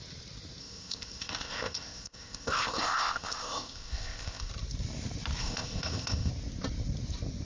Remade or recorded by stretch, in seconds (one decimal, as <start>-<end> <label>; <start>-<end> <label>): 0.0-0.6 recorded; 0.6-4.5 remade; 4.5-5.4 recorded; 5.4-6.3 remade; 6.3-7.4 recorded